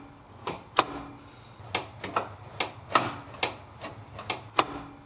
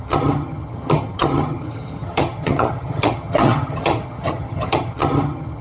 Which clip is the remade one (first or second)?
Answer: second